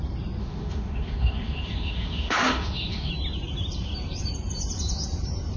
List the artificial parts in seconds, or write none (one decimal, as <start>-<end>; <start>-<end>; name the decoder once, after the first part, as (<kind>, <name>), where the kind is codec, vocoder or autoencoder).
0.4-3.1 (autoencoder, DAC-VAE)